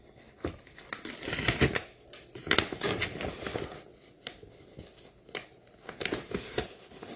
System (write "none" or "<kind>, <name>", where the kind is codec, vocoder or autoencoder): none